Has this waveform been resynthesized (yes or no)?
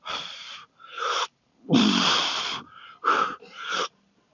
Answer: yes